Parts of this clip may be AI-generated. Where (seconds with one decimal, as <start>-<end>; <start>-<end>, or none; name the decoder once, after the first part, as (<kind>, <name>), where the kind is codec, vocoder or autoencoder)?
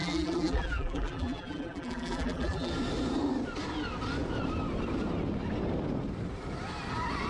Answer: 0.0-2.7 (vocoder, BigVGAN v2)